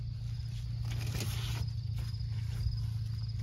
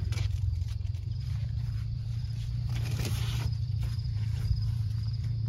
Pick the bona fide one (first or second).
first